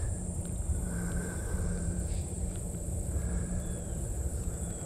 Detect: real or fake fake